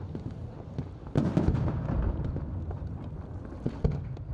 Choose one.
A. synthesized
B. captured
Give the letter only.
B